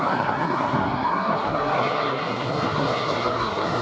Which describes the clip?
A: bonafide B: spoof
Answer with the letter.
B